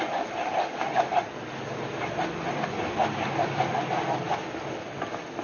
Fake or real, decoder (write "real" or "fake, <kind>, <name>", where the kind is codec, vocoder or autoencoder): real